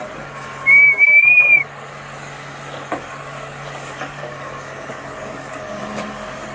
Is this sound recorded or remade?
remade